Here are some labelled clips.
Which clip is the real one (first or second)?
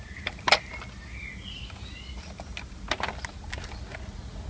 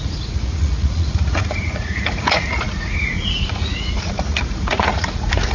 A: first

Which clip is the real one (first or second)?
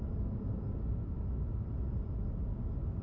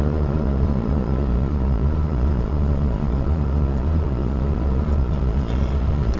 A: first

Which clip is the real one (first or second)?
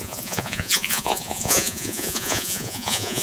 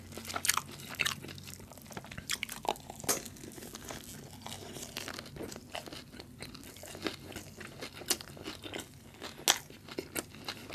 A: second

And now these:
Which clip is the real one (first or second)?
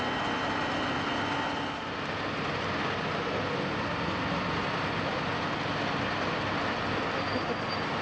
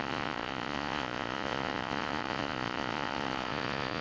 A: first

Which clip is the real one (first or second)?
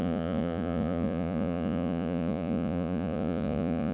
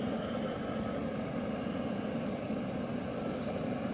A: second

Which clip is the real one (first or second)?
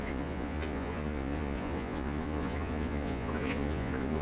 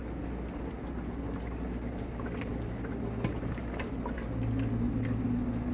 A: second